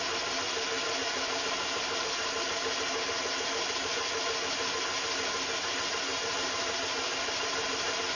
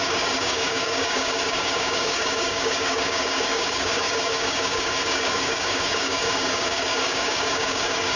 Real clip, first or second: first